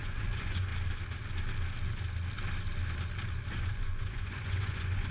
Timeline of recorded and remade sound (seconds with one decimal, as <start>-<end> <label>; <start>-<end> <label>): 0.0-0.7 remade; 0.7-3.5 recorded; 3.5-5.1 remade